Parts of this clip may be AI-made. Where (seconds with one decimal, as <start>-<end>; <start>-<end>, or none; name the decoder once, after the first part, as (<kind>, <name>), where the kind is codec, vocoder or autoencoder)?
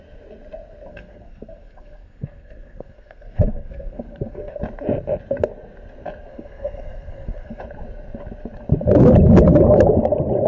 0.9-4.6 (codec, SNAC); 6.3-7.6